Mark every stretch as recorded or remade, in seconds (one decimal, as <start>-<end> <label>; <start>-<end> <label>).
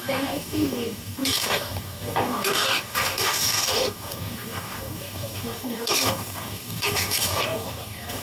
0.0-8.2 remade